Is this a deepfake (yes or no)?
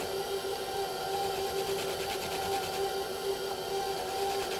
no